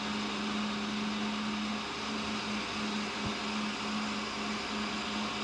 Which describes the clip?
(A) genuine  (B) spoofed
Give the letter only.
A